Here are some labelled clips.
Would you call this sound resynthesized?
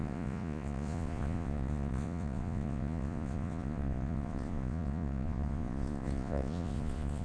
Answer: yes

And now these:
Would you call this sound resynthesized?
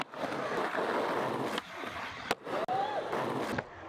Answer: no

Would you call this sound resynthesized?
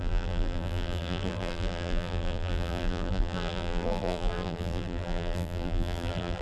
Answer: yes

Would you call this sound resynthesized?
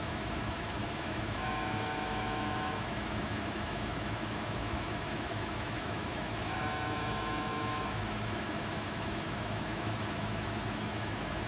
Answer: yes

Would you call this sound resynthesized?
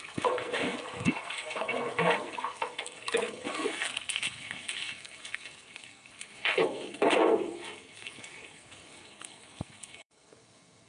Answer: yes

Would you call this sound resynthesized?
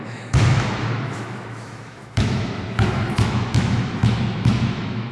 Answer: yes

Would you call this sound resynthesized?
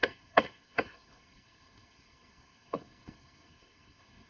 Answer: yes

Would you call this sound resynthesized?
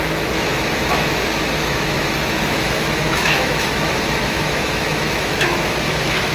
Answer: yes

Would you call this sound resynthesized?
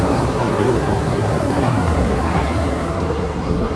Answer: yes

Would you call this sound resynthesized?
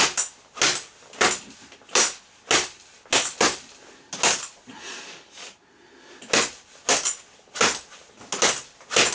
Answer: no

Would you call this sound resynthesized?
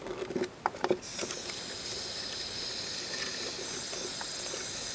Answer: no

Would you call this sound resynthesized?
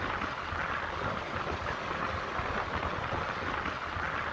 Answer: no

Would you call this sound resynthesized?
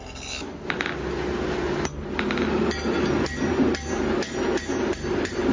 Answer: no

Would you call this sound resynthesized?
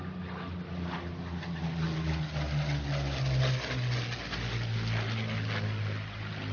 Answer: no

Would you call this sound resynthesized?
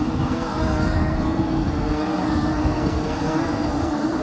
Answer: yes